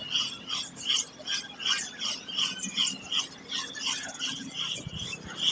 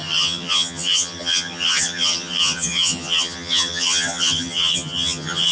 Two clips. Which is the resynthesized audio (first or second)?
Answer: second